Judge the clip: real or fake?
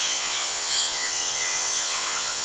fake